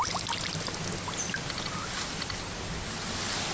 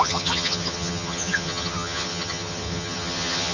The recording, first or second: first